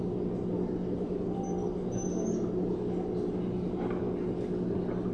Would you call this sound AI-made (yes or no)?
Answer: no